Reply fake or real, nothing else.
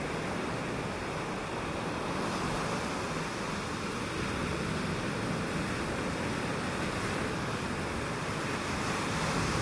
real